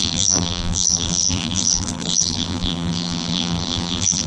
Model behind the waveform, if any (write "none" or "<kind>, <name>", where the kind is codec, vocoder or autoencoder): vocoder, BigVGAN v2